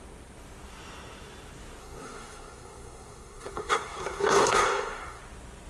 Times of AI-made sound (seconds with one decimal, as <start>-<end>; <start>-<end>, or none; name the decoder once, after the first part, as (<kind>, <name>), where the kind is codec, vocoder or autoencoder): 1.8-5.2 (codec, SNAC)